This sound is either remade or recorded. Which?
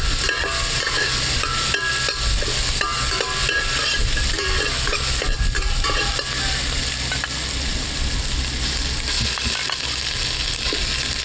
recorded